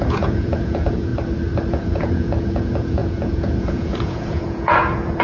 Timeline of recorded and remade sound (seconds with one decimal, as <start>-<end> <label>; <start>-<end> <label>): 0.0-1.1 remade; 1.1-1.7 recorded; 1.7-5.2 remade